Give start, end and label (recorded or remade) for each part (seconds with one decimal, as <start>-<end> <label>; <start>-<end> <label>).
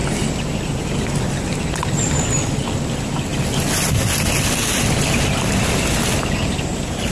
0.0-7.1 recorded